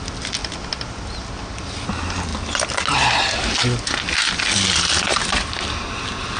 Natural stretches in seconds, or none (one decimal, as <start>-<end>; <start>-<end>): 0.0-6.4